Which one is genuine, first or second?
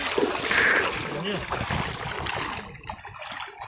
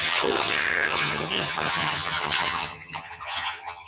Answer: first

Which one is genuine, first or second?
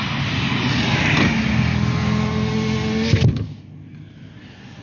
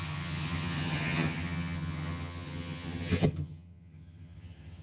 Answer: first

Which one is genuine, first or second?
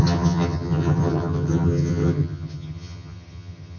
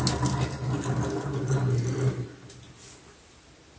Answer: second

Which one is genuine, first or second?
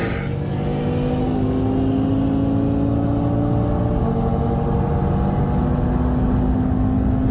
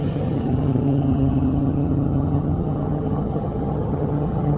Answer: first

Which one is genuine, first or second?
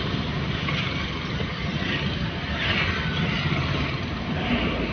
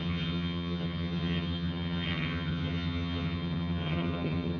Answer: first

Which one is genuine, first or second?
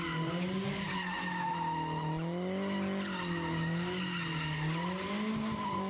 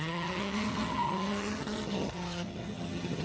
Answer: first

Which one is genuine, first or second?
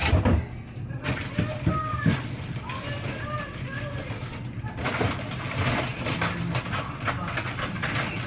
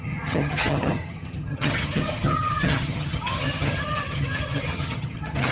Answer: first